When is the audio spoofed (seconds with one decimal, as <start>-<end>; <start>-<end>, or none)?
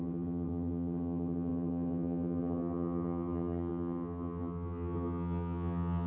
0.0-6.1